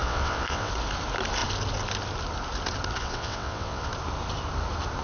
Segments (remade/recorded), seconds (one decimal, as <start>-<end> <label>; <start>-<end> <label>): 0.0-0.7 remade; 0.7-3.0 recorded; 3.0-3.9 remade; 3.9-5.0 recorded

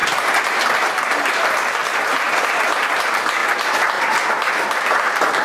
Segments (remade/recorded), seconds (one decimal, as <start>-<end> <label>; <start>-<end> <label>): 0.0-5.4 recorded

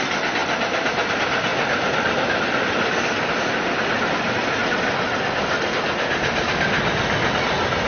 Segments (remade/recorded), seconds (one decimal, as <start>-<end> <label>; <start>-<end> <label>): 0.0-0.4 recorded; 0.4-1.1 remade; 1.1-7.9 recorded

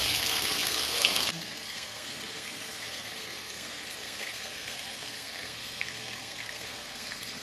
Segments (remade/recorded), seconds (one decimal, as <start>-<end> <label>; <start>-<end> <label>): 0.0-7.4 remade

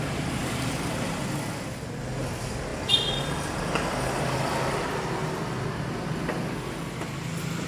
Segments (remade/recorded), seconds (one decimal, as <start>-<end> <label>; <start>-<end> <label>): 0.0-0.4 recorded; 0.4-1.2 remade; 1.2-7.7 recorded